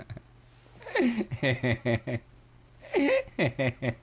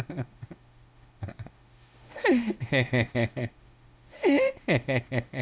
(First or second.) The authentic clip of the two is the first